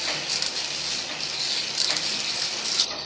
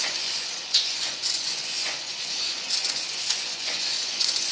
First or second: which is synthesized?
second